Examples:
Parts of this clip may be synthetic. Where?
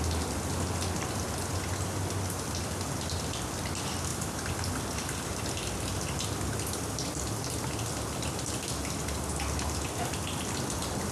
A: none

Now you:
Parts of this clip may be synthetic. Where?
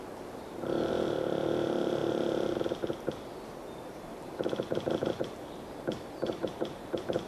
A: 0.0-2.0 (vocoder, BigVGAN v2); 3.8-7.3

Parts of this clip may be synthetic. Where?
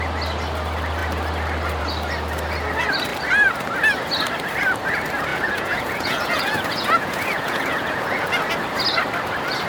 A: 5.3-8.3 (vocoder, Vocos)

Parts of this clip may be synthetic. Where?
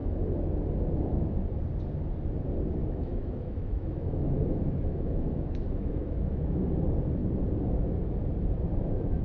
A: 2.8-6.6 (autoencoder, DAC-VAE)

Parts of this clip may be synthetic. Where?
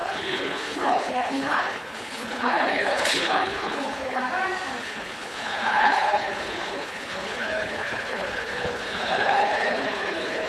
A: 0.0-4.2 (codec, HILCodec); 4.8-10.5